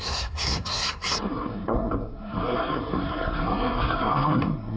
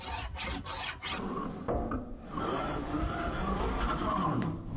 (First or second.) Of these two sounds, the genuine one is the second